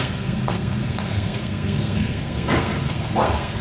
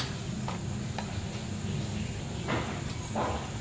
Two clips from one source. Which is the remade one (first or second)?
first